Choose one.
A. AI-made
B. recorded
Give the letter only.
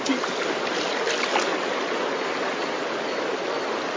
B